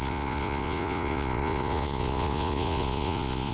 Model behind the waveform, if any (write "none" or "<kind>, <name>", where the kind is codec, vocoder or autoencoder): vocoder, Vocos